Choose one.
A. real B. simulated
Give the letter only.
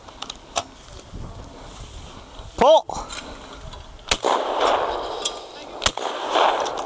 A